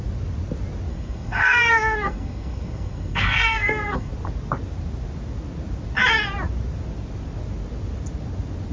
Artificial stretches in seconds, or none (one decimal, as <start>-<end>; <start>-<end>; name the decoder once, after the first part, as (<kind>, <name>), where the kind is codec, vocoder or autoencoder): 0.9-4.1 (codec, SNAC)